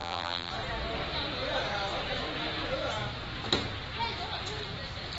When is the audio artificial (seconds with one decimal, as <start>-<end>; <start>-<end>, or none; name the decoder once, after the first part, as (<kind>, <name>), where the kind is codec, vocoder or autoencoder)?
0.0-0.5 (vocoder, BigVGAN v2)